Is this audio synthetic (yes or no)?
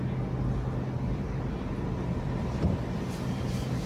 no